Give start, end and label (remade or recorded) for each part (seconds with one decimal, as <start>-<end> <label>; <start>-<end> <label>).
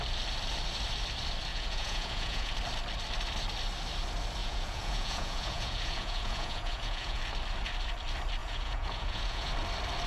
0.0-1.5 recorded; 1.5-2.5 remade; 2.5-4.4 recorded; 4.4-7.2 remade; 7.2-8.4 recorded; 8.4-9.5 remade; 9.5-10.1 recorded